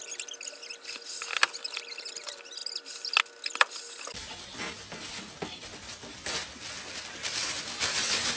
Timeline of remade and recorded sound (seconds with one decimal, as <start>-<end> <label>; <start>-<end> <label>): 0.0-8.4 recorded